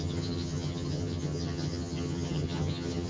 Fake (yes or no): yes